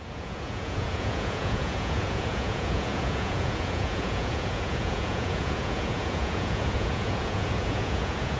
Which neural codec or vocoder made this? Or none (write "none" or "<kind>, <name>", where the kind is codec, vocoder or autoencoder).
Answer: vocoder, Vocos